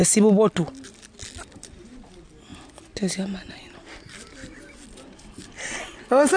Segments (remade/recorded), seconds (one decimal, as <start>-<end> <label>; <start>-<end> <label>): 0.0-6.4 recorded